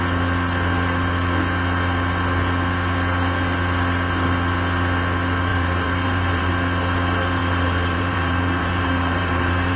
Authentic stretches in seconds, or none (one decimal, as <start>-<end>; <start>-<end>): 0.0-5.5; 6.5-7.4

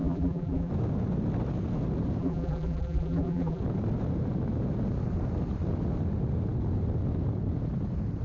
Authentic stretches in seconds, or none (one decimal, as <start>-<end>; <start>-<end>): 0.7-2.2; 3.6-8.2

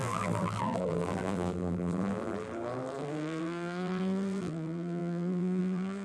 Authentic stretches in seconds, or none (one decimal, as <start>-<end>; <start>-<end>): none